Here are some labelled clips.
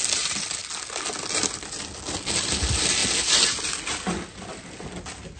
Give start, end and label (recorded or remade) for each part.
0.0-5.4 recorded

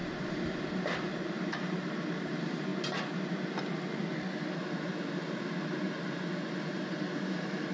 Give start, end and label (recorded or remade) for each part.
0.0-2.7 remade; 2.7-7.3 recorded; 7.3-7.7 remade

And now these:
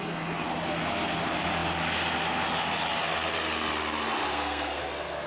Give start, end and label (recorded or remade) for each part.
0.0-4.3 recorded; 4.3-4.8 remade; 4.8-5.3 recorded